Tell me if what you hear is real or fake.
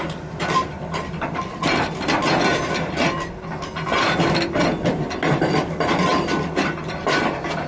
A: real